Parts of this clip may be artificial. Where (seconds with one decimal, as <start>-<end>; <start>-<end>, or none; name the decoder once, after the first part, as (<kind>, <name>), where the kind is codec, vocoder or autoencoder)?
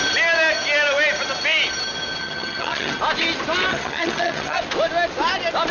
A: 2.2-3.0 (vocoder, HiFi-GAN); 3.7-4.6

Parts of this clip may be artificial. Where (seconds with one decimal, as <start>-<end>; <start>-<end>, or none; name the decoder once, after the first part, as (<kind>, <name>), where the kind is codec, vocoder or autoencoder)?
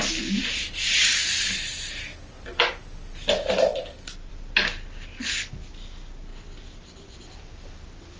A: none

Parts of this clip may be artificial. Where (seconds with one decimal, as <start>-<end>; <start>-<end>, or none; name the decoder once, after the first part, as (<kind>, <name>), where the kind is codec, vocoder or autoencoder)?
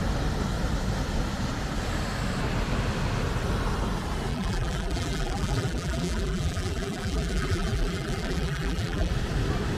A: 4.3-9.1 (vocoder, BigVGAN v2)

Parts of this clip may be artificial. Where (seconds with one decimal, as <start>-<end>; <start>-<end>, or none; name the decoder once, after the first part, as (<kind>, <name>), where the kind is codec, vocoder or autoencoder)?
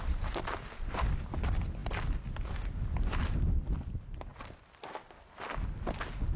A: none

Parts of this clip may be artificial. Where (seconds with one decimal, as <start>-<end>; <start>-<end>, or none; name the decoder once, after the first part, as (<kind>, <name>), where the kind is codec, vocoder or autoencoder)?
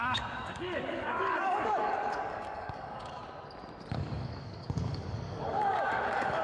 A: 0.0-3.2 (codec, DAC); 3.9-6.4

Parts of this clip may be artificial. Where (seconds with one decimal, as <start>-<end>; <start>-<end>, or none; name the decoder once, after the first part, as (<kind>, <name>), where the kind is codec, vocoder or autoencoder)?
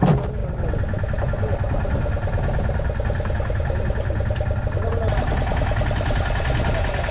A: none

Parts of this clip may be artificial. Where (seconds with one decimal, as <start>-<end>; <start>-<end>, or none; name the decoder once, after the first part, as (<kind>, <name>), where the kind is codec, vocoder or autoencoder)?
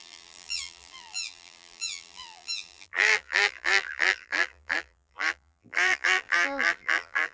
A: 0.0-7.3 (vocoder, BigVGAN v2)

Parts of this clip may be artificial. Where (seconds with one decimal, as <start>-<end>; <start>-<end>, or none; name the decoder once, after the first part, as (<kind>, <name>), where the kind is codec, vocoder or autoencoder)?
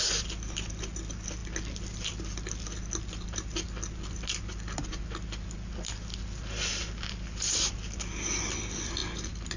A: none